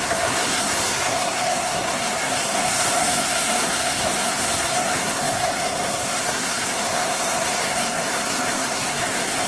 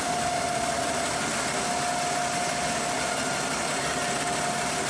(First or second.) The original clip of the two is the second